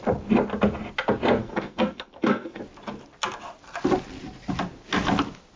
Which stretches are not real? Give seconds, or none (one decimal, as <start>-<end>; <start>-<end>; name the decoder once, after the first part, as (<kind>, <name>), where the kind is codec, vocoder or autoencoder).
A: 1.4-2.6 (codec, SNAC)